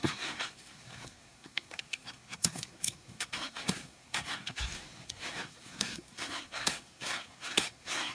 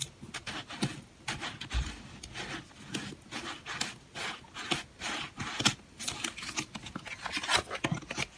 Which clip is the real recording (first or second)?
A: second